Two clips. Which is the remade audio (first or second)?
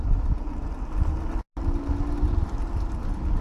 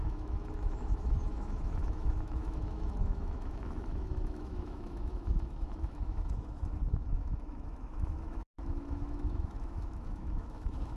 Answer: second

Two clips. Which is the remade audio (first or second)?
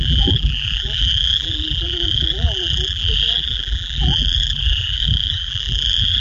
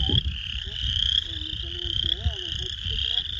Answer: first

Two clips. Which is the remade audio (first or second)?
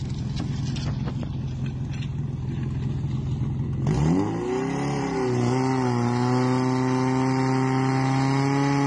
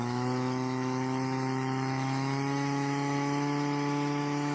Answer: second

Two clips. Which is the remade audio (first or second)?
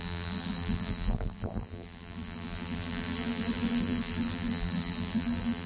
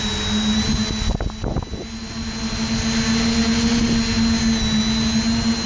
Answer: first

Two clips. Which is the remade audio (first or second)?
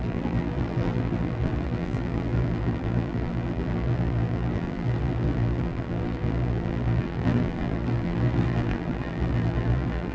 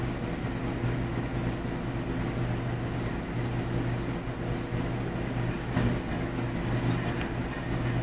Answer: first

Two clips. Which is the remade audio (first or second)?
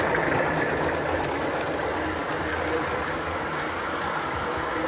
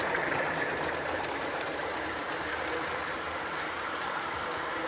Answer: second